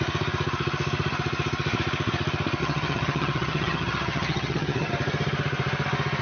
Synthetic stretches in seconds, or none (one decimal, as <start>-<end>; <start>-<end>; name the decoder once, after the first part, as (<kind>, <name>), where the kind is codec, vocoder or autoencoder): 2.6-4.9 (vocoder, HiFi-GAN)